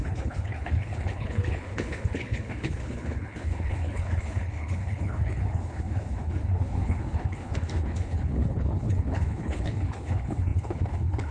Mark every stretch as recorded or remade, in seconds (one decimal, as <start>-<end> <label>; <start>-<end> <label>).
0.0-11.3 remade